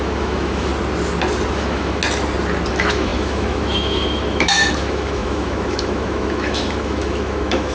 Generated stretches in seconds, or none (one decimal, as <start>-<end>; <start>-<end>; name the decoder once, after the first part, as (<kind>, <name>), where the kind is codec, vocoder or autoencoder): 0.0-0.7 (autoencoder, DAC-VAE); 1.5-2.0; 2.7-7.7